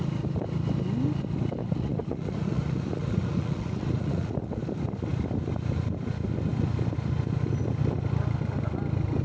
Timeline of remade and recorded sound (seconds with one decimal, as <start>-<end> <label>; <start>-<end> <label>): 0.0-1.6 recorded; 1.6-4.6 remade; 4.6-9.2 recorded